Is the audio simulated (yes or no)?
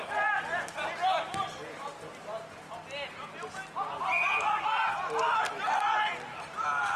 no